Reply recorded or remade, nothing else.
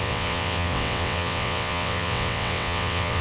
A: remade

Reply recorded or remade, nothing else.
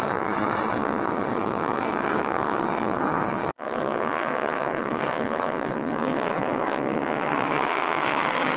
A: remade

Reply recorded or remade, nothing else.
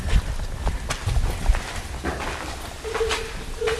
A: recorded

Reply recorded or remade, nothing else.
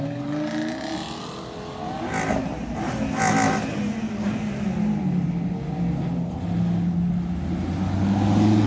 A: recorded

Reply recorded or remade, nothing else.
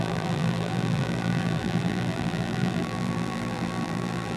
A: remade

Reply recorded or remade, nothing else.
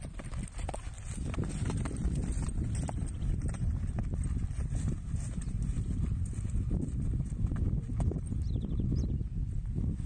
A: recorded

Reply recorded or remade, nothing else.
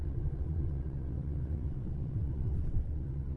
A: remade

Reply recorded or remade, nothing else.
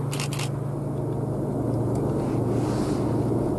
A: recorded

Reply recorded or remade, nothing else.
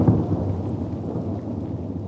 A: recorded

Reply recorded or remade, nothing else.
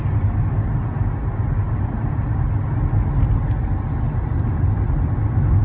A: recorded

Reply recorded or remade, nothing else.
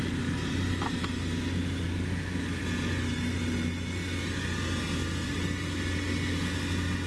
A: recorded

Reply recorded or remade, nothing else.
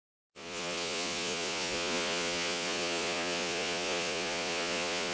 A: remade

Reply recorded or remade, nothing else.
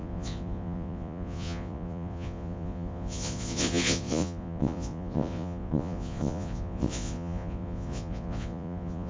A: remade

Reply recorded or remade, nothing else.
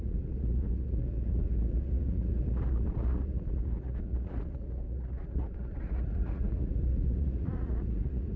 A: remade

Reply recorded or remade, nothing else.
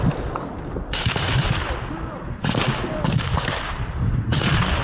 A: recorded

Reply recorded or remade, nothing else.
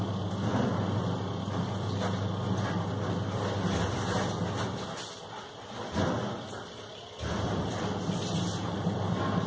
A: recorded